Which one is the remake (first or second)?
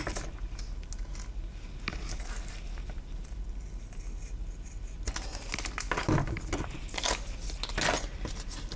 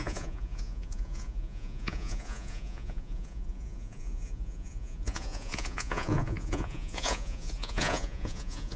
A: second